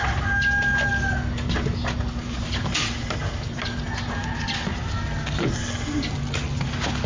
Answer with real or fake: real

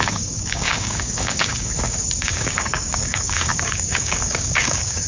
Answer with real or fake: fake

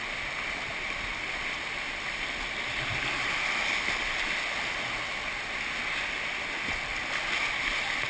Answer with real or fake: real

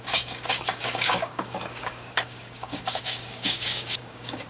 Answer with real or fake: fake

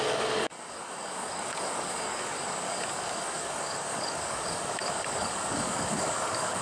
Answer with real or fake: fake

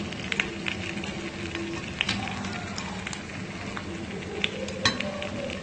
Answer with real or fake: real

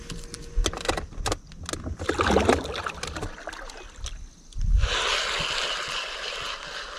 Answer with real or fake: real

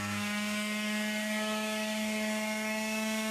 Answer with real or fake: fake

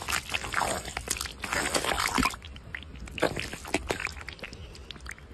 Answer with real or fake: real